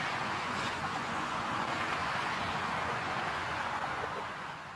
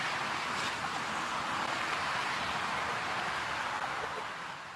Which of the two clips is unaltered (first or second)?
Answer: second